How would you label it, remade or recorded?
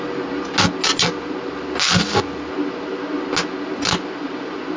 recorded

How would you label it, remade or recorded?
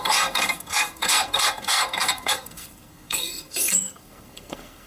remade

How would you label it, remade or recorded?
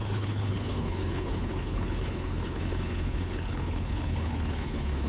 remade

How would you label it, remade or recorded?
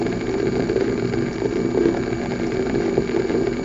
recorded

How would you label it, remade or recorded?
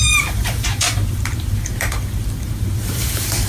remade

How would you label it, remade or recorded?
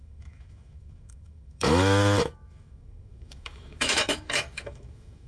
remade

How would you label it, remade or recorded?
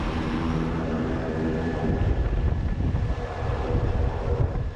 remade